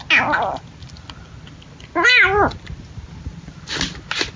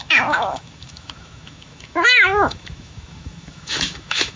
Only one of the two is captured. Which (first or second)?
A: first